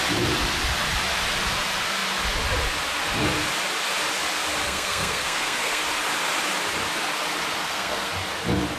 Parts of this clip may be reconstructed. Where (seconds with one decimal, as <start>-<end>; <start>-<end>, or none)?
4.6-5.8; 7.6-8.1